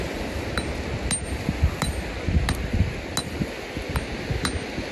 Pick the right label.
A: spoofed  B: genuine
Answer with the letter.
B